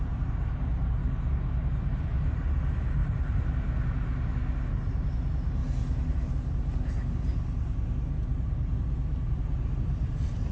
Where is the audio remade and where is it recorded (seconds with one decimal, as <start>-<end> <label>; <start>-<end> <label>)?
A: 0.0-1.0 remade; 1.0-2.0 recorded; 2.0-3.0 remade; 3.0-4.7 recorded; 4.7-5.6 remade; 5.6-6.3 recorded; 6.3-7.3 remade; 7.3-9.2 recorded; 9.2-10.5 remade